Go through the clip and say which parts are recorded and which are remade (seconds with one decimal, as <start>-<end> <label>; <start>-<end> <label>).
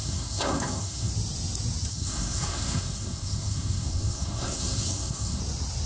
0.0-1.1 remade; 1.1-1.9 recorded; 1.9-5.4 remade; 5.4-5.9 recorded